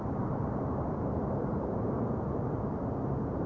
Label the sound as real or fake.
fake